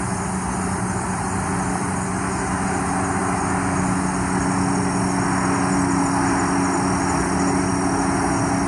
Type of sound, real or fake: real